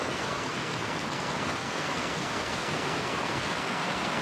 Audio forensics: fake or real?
fake